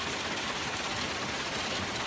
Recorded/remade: recorded